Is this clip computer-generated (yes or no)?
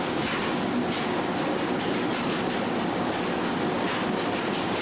no